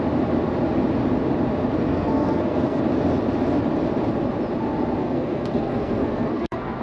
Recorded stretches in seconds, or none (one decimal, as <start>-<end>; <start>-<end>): 0.0-1.9; 2.8-5.0